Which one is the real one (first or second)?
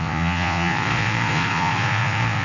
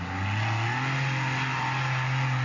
second